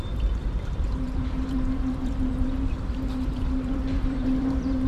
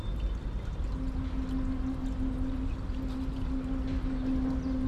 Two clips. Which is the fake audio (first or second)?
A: first